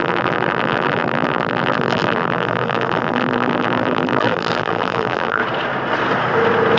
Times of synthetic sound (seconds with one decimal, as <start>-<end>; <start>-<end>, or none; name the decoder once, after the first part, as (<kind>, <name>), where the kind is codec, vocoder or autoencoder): 0.0-5.4 (vocoder, BigVGAN v2)